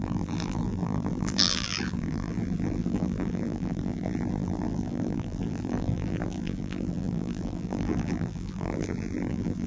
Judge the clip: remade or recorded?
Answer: remade